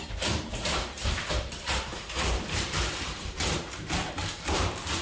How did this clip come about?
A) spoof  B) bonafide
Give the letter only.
A